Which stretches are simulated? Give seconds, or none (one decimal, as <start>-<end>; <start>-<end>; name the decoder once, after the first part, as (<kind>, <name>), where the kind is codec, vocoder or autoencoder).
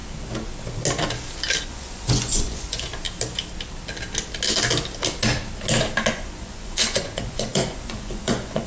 1.6-2.9 (vocoder, Vocos); 6.1-8.7